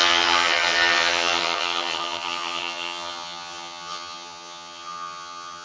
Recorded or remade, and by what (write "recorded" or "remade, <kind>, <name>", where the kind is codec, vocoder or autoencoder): remade, vocoder, HiFi-GAN